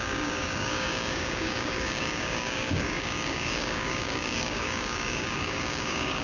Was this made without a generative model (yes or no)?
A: no